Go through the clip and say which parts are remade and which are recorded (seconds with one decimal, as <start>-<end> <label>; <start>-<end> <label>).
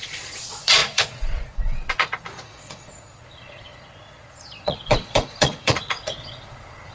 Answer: 0.0-6.9 remade